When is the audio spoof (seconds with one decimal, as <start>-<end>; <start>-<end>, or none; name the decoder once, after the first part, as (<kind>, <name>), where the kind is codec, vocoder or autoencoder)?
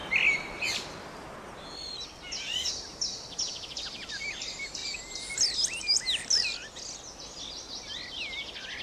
none